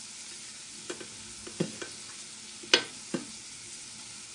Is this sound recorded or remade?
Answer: recorded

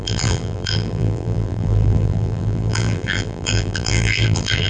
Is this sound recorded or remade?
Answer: remade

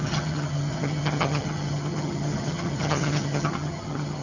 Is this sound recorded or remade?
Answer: remade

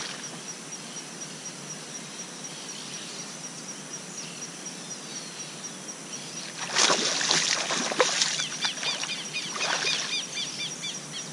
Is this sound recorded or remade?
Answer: recorded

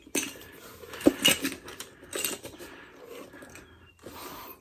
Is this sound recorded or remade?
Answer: recorded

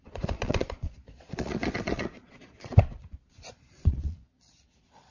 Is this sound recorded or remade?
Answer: remade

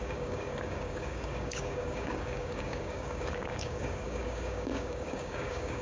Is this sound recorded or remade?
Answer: remade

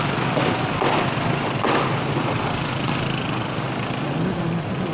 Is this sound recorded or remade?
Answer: recorded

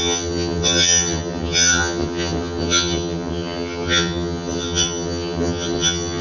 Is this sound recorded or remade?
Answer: remade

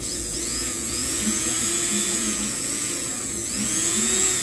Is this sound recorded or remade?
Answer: remade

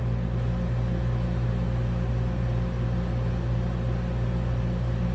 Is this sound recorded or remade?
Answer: recorded